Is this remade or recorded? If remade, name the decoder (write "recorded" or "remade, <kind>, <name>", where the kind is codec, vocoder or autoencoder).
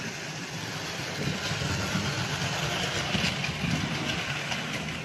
recorded